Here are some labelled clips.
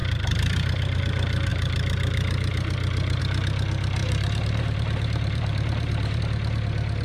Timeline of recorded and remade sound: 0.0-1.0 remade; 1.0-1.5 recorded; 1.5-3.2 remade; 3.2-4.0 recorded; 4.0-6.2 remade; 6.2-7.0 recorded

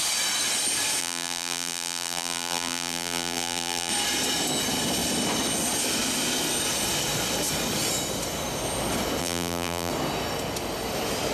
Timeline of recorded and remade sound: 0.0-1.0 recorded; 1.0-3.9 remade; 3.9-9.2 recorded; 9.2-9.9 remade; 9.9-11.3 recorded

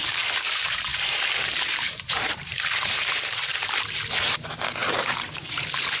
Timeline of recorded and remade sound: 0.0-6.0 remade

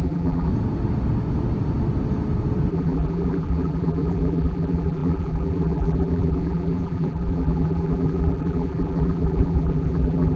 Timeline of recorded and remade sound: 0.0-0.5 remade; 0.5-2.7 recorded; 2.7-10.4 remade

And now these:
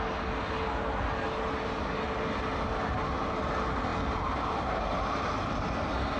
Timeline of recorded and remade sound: 0.0-6.2 recorded

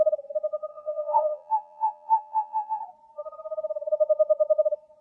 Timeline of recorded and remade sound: 0.0-0.7 recorded; 0.7-2.8 remade; 2.8-5.0 recorded

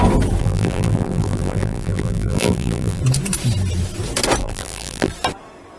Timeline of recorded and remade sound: 0.0-0.4 recorded; 0.4-3.0 remade; 3.0-4.4 recorded; 4.4-5.1 remade; 5.1-5.8 recorded